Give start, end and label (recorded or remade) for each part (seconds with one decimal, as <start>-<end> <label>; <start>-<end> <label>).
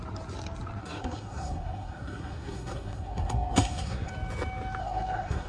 0.0-0.8 recorded; 0.8-4.1 remade; 4.1-4.8 recorded; 4.8-5.5 remade